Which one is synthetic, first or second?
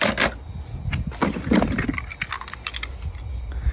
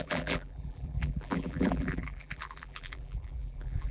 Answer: second